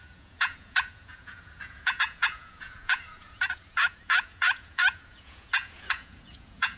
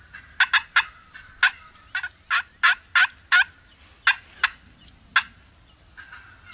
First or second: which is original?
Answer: second